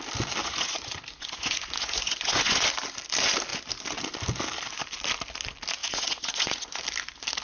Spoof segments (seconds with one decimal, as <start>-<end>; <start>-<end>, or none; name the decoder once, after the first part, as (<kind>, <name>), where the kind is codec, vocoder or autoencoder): 0.4-2.6 (vocoder, Vocos); 5.8-6.8